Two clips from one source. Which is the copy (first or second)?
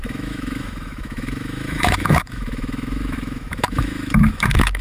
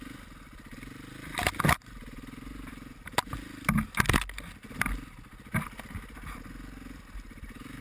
first